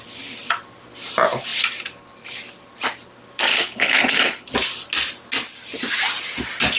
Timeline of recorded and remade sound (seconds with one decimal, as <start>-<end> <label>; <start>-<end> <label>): 0.0-3.5 recorded; 3.5-4.5 remade; 4.5-6.8 recorded